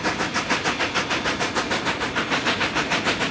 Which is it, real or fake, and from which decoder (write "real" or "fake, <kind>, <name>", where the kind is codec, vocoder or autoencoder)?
real